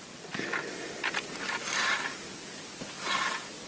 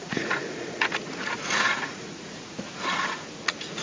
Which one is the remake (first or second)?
second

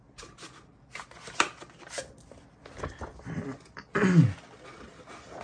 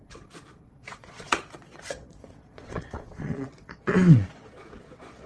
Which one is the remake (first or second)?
second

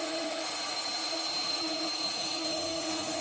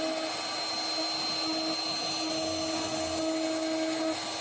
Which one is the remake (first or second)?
first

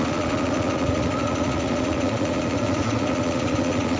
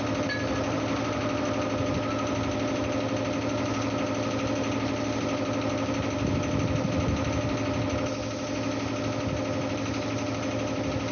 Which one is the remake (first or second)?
first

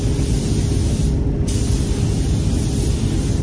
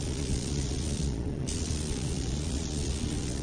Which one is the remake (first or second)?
second